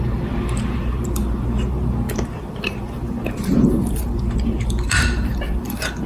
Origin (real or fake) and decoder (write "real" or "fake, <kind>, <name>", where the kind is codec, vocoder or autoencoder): fake, vocoder, BigVGAN v2